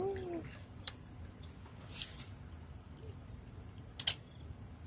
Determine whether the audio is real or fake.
real